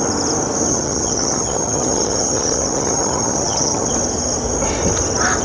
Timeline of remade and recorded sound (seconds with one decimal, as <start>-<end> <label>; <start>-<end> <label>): 0.0-0.7 recorded; 0.7-3.9 remade; 3.9-5.4 recorded